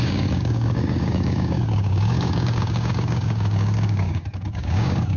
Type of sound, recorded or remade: remade